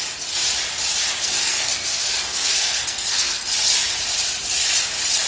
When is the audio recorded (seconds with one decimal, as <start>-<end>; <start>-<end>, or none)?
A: 0.0-1.2; 3.5-5.3